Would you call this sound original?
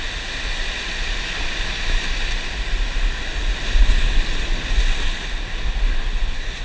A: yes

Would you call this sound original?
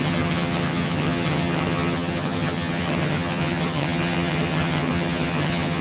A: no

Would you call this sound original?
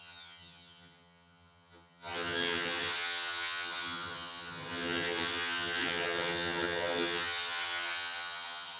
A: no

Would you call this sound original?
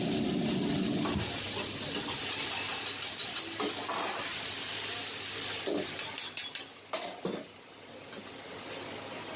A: yes